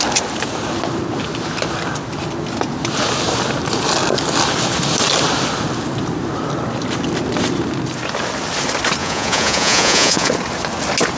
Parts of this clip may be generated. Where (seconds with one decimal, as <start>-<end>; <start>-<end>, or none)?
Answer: 9.0-10.3

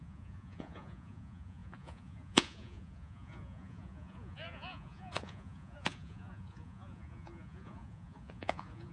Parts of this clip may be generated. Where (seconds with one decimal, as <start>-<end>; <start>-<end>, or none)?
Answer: 0.0-8.9

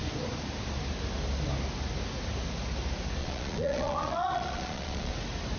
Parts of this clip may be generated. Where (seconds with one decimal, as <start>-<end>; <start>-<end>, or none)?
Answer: 3.2-5.1

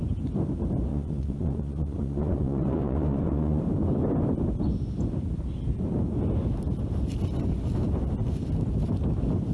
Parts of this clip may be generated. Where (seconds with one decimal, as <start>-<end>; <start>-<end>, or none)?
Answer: 0.9-3.6

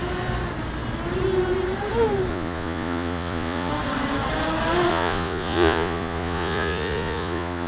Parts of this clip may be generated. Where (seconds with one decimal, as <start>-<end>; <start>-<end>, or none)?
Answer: 2.3-3.7; 4.9-7.7

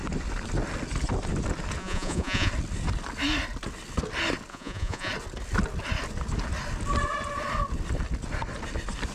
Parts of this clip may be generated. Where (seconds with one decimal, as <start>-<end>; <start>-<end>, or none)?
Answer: 1.8-2.5; 4.5-5.1

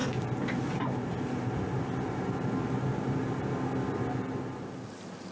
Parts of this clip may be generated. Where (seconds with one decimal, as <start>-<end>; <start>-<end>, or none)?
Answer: none